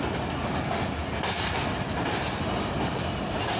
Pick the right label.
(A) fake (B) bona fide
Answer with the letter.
B